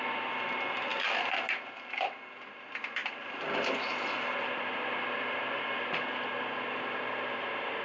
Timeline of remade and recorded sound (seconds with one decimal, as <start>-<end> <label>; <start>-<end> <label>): 0.0-7.8 recorded